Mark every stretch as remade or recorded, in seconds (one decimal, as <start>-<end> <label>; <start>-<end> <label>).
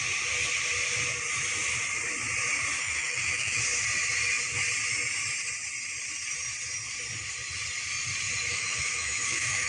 0.0-2.8 recorded; 2.8-3.6 remade; 3.6-8.5 recorded; 8.5-9.7 remade